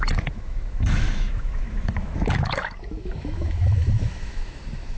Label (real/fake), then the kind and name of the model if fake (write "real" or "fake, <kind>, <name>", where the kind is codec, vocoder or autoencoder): fake, autoencoder, DAC-VAE